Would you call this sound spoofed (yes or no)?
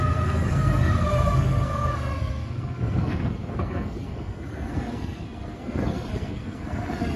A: yes